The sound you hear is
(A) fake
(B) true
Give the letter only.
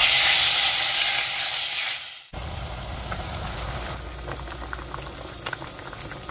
B